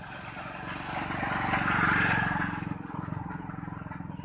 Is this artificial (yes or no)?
no